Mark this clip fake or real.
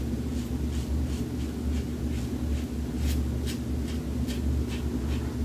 real